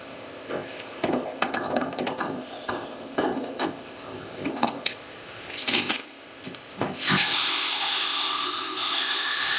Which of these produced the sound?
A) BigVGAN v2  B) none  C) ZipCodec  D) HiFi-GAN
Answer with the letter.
C